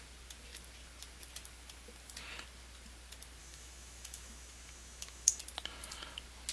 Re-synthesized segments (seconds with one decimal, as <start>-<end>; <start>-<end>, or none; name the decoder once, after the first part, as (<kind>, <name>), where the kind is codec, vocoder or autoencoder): 3.4-5.4 (autoencoder, DAC-VAE)